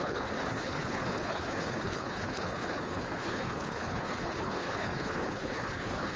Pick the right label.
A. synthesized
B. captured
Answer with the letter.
A